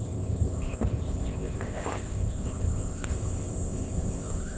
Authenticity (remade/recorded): remade